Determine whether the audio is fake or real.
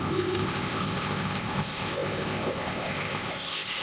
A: fake